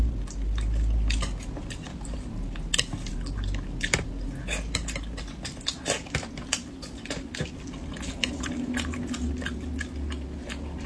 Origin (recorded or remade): recorded